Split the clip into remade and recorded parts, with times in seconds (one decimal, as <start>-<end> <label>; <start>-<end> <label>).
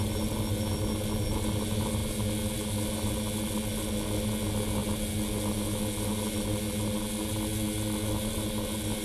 0.0-9.0 recorded